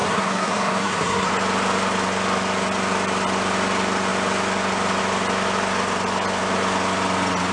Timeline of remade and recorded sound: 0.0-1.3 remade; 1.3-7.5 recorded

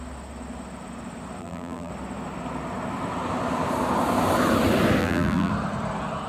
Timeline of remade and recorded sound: 0.0-1.4 recorded; 1.4-1.9 remade; 1.9-5.0 recorded; 5.0-5.5 remade; 5.5-6.3 recorded

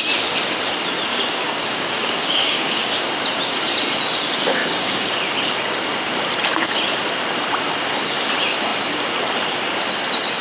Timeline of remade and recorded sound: 0.0-1.1 recorded; 1.1-3.0 remade; 3.0-4.6 recorded; 4.6-5.1 remade; 5.1-10.4 recorded

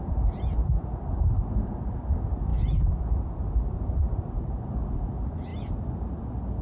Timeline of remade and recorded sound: 0.0-6.6 recorded

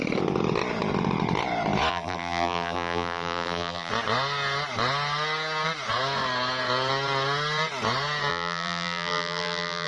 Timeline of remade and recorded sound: 0.0-1.9 recorded; 1.9-3.9 remade; 3.9-8.3 recorded; 8.3-9.9 remade

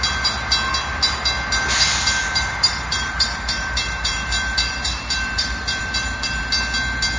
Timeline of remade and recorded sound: 0.0-2.2 recorded; 2.2-6.5 remade; 6.5-7.2 recorded

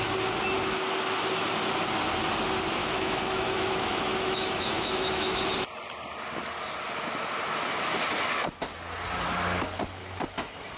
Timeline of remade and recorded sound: 0.0-2.8 recorded; 2.8-5.4 remade; 5.4-10.8 recorded

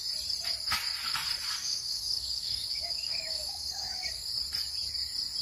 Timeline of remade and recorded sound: 0.0-1.6 recorded; 1.6-4.3 remade; 4.3-5.4 recorded